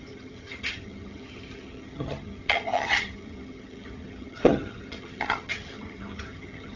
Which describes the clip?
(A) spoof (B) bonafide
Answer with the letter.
A